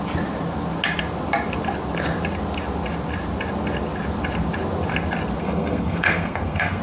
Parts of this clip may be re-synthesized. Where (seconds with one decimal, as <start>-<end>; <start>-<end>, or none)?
5.4-6.8

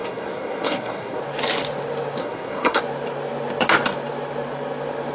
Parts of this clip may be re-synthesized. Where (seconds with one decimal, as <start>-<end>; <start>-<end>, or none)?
0.0-1.2; 2.2-2.8